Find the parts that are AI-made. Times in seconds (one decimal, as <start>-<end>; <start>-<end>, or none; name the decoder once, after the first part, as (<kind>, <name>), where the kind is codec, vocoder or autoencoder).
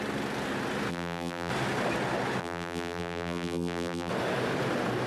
0.9-1.5 (vocoder, BigVGAN v2); 2.4-4.1